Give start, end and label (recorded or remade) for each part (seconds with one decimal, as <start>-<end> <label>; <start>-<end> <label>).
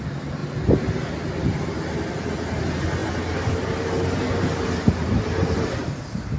0.0-6.4 recorded